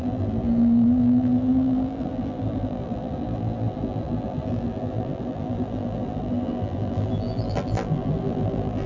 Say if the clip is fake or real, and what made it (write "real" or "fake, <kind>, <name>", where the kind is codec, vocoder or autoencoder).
fake, vocoder, BigVGAN v2